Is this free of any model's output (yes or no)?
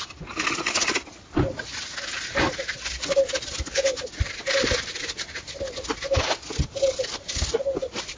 yes